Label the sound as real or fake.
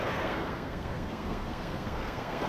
fake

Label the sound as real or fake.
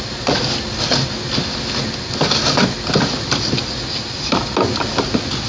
real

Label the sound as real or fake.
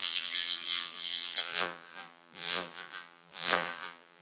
fake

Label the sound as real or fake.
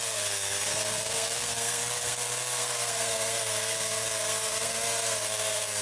fake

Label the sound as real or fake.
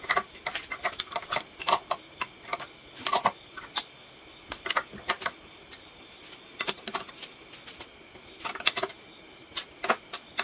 real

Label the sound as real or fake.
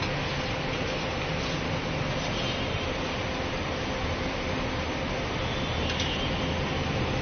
real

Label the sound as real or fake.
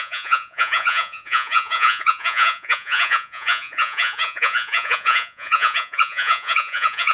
fake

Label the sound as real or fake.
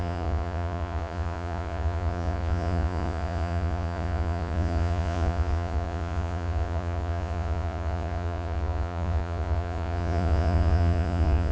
fake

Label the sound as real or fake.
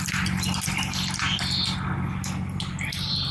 real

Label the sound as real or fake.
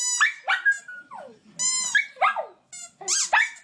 real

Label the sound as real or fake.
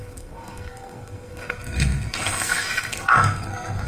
fake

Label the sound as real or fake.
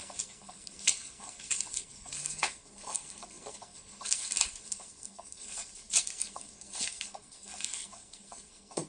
fake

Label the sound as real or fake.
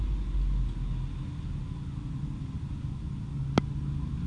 real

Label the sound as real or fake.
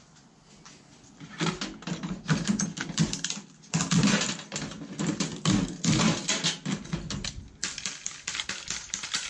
real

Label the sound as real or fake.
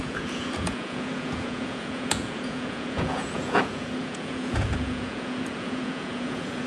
fake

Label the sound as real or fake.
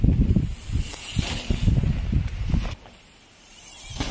real